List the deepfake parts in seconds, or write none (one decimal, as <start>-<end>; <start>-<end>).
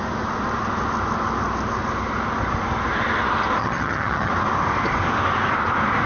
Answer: 3.6-4.3